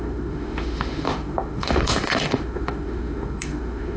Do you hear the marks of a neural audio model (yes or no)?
yes